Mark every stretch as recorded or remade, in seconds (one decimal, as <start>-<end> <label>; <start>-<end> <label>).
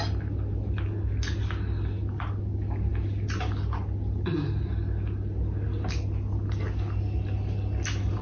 0.0-8.2 recorded